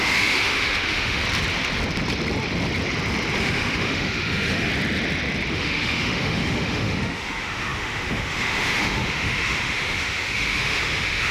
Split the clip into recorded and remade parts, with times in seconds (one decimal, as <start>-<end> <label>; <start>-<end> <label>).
0.0-1.2 remade; 1.2-3.4 recorded; 3.4-4.7 remade; 4.7-5.5 recorded; 5.5-11.3 remade